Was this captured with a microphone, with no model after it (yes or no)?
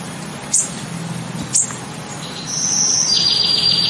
yes